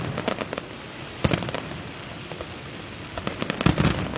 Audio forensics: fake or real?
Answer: real